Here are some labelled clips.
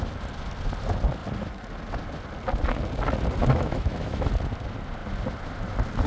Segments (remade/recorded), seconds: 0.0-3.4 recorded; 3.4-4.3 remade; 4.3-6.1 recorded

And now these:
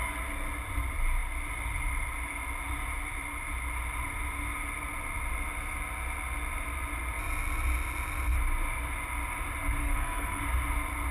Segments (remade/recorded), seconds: 0.0-9.8 recorded; 9.8-10.4 remade; 10.4-11.1 recorded

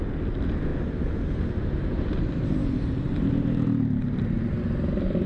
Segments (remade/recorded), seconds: 0.0-5.3 recorded

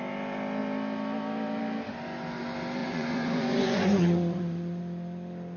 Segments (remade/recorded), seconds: 0.0-2.8 recorded; 2.8-4.8 remade; 4.8-5.6 recorded

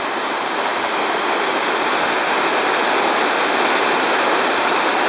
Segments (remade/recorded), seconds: 0.0-5.1 recorded

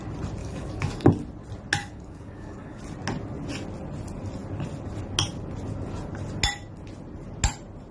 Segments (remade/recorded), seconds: 0.0-0.4 recorded; 0.4-1.1 remade; 1.1-1.8 recorded; 1.8-2.8 remade; 2.8-7.9 recorded

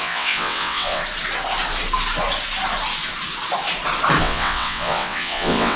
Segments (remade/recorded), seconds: 0.0-1.0 remade; 1.0-4.2 recorded; 4.2-5.8 remade